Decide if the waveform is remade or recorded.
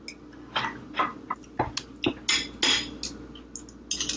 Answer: recorded